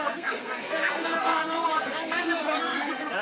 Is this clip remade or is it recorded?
remade